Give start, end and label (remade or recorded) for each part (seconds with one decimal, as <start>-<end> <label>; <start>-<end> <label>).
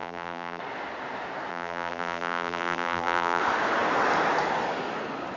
0.0-0.6 remade; 0.6-1.5 recorded; 1.5-3.4 remade; 3.4-5.4 recorded